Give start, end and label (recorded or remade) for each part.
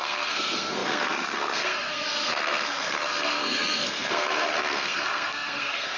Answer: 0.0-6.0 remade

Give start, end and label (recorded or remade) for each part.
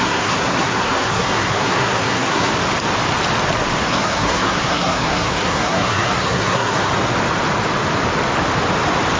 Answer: 0.0-2.5 remade; 2.5-3.8 recorded; 3.8-6.9 remade; 6.9-9.2 recorded